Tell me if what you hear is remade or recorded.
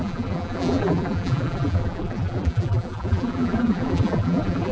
remade